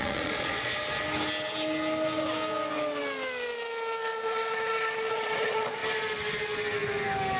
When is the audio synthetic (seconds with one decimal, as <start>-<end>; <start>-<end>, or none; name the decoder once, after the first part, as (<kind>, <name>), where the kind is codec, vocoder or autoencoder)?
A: 0.0-0.7 (vocoder, Vocos); 5.1-5.8